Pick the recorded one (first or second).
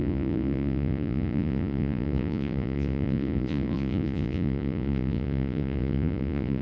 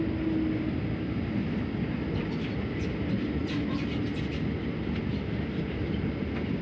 second